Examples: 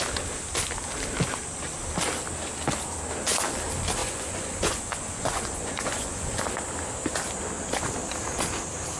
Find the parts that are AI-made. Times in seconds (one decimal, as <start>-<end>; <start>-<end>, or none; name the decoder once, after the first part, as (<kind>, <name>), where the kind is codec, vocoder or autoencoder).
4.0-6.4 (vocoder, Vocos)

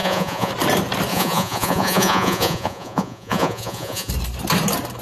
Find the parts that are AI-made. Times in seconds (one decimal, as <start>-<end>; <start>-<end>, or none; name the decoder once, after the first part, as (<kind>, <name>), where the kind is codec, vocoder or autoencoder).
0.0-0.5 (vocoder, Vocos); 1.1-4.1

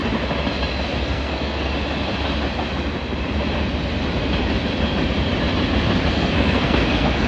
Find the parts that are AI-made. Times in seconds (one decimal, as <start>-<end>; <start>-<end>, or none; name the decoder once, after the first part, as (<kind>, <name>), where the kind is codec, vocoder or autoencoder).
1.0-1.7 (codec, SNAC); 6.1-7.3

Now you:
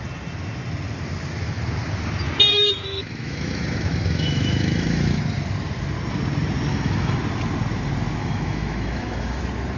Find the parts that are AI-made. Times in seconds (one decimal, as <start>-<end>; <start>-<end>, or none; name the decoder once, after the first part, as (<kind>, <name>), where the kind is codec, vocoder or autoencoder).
2.5-5.2 (autoencoder, DAC-VAE); 6.7-7.2; 8.2-9.4

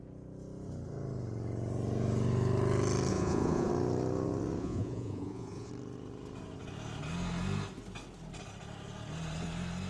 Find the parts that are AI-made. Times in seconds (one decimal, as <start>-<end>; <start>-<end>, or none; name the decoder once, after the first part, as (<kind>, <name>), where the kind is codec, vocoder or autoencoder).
3.1-3.7 (vocoder, Vocos); 4.6-5.7

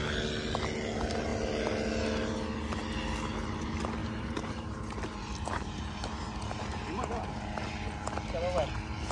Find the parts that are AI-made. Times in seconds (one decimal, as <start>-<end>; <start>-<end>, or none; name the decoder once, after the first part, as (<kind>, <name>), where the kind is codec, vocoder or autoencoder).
4.0-7.6 (vocoder, BigVGAN v2)